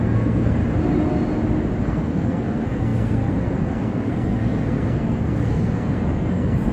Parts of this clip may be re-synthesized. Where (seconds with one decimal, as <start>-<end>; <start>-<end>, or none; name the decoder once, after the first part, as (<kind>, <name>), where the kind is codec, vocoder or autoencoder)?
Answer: 0.0-0.6 (codec, SNAC); 1.8-6.7